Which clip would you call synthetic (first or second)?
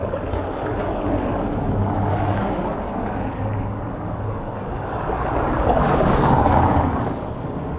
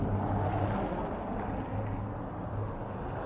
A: first